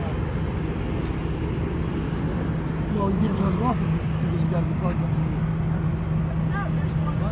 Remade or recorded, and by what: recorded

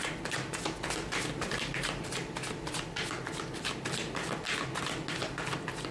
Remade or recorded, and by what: recorded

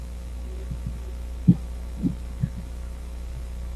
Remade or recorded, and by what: remade, autoencoder, DAC-VAE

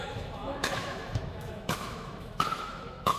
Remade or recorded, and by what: remade, autoencoder, DAC-VAE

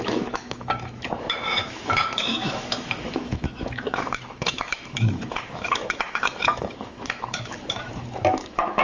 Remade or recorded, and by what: remade, autoencoder, DAC-VAE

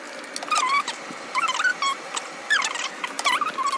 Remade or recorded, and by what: recorded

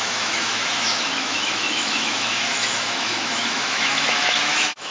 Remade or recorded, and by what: remade, autoencoder, DAC-VAE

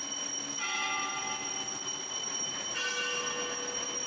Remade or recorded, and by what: recorded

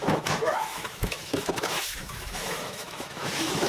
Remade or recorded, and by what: remade, autoencoder, DAC-VAE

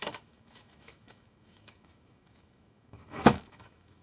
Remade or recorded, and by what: remade, autoencoder, DAC-VAE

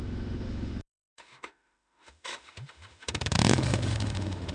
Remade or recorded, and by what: remade, autoencoder, DAC-VAE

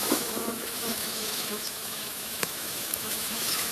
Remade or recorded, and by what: remade, autoencoder, DAC-VAE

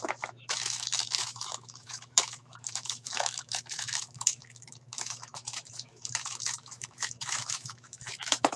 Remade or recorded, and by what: remade, autoencoder, DAC-VAE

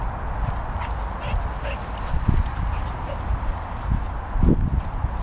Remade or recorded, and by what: recorded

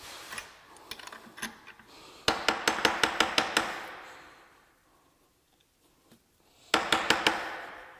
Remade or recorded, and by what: recorded